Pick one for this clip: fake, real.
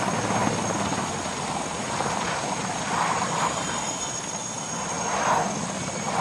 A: real